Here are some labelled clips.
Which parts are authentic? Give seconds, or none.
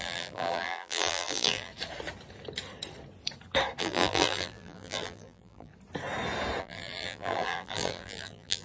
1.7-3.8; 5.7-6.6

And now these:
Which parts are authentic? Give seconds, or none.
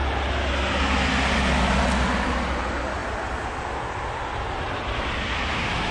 0.0-5.9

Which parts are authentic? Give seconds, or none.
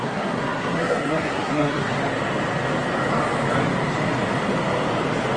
2.0-5.4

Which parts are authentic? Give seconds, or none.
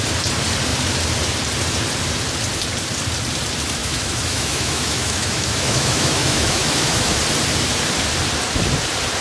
0.0-3.8; 7.2-9.2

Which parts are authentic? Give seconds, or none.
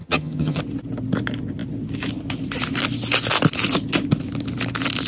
0.6-5.1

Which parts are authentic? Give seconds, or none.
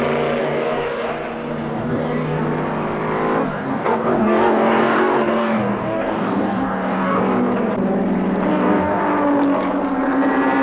0.0-0.4; 1.1-1.7; 2.4-3.4; 7.2-8.5; 9.0-10.6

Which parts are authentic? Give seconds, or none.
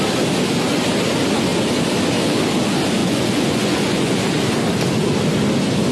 0.0-3.0; 4.2-5.9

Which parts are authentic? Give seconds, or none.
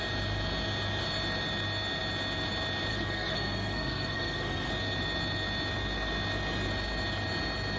0.0-2.9; 4.7-7.8